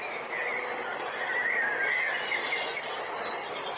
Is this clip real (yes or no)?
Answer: yes